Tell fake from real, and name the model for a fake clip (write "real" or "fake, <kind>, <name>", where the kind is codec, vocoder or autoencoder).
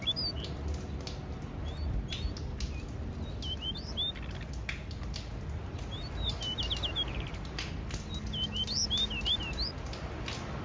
real